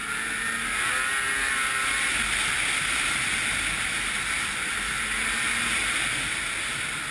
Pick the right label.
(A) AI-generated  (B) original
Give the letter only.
B